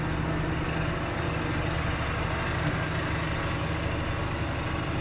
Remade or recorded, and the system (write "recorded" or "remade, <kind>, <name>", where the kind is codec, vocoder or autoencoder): recorded